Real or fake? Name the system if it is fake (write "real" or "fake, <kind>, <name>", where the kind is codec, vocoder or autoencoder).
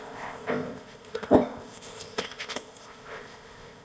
fake, codec, ZipCodec